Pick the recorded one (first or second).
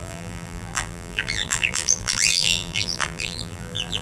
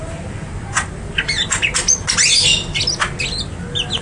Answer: second